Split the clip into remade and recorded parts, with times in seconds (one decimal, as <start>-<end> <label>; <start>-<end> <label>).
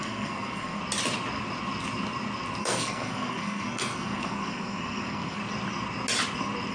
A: 0.0-0.8 remade; 0.8-2.6 recorded; 2.6-5.4 remade; 5.4-6.7 recorded